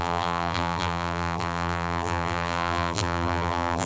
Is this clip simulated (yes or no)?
yes